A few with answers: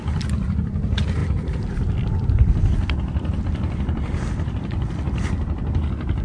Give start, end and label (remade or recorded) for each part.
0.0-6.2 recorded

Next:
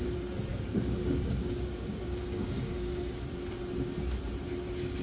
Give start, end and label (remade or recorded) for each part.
0.0-0.5 recorded; 0.5-3.0 remade; 3.0-5.0 recorded

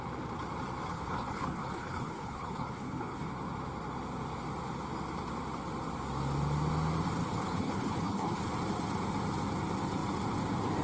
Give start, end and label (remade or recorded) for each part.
0.0-0.9 recorded; 0.9-3.3 remade; 3.3-7.2 recorded; 7.2-8.4 remade; 8.4-10.8 recorded

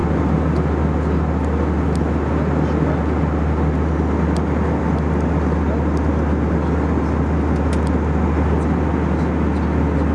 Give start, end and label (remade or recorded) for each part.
0.0-10.1 recorded